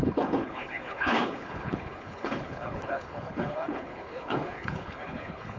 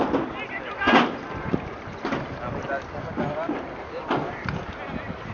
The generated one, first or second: first